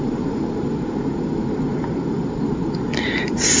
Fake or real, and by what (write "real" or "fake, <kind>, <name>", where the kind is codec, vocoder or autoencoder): real